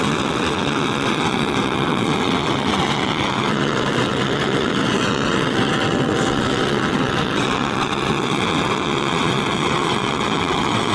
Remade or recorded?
remade